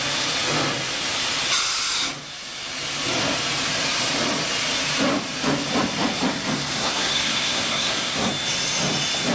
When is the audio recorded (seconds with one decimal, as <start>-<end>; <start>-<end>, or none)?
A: 0.0-6.8; 8.3-9.3